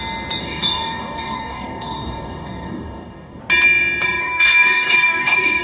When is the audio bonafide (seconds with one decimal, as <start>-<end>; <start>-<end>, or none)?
0.0-0.4; 3.4-4.2